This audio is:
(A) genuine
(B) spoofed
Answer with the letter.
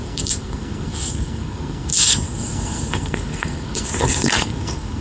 B